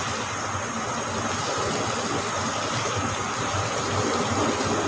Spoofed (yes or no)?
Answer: no